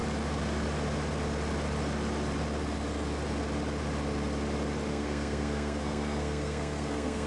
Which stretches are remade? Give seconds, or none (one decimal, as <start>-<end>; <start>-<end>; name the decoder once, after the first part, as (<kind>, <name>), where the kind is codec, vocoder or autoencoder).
4.9-7.3 (codec, SNAC)